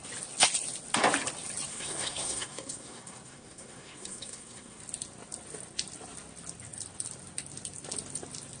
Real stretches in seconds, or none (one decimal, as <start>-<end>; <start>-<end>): 0.0-1.7; 4.8-8.6